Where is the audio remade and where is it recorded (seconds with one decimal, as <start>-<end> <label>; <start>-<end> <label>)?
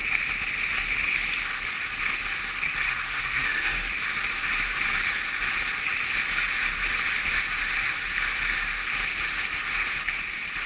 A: 0.0-2.8 recorded; 2.8-3.9 remade; 3.9-10.7 recorded